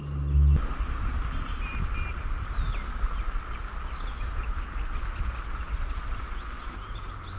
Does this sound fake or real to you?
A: real